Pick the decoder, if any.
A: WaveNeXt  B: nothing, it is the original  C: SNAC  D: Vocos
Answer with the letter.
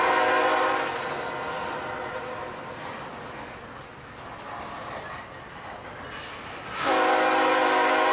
B